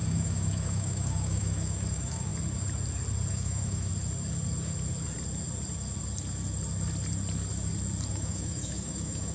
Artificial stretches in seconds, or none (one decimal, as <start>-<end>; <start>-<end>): 0.0-2.3; 3.3-3.9; 8.1-9.3